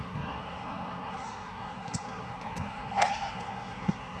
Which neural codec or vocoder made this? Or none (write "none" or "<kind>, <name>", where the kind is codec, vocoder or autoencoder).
codec, SNAC